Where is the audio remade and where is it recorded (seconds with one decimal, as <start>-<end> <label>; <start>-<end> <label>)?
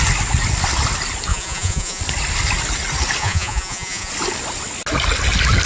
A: 0.0-1.3 recorded; 1.3-2.0 remade; 2.0-3.2 recorded; 3.2-4.1 remade; 4.1-5.7 recorded